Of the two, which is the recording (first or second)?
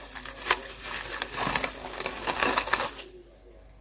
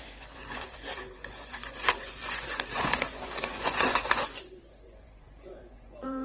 first